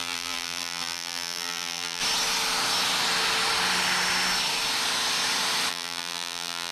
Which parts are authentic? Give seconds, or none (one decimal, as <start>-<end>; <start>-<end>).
2.0-5.7